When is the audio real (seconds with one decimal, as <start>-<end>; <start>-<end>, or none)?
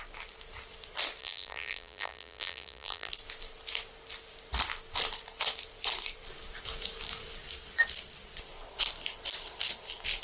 0.0-1.2; 3.1-10.2